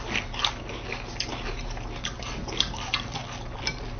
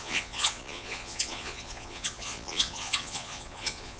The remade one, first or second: second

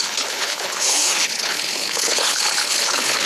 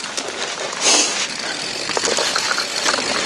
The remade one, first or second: first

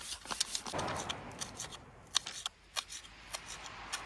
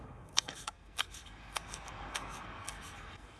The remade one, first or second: second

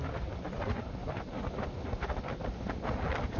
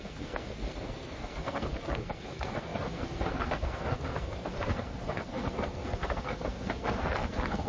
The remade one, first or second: second